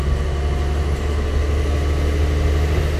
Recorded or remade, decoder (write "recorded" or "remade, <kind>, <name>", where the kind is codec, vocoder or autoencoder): recorded